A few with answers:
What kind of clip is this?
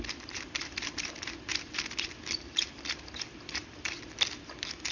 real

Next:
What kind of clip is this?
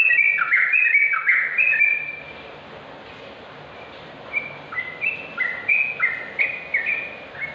real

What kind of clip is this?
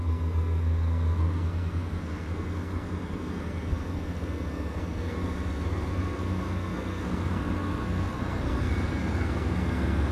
fake